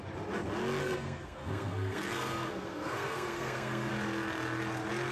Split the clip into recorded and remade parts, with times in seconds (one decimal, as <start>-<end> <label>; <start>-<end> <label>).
0.0-0.8 recorded; 0.8-3.9 remade; 3.9-5.1 recorded